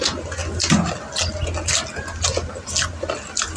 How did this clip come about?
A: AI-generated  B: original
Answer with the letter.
B